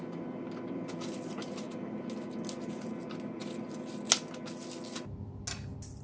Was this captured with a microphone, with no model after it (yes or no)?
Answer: yes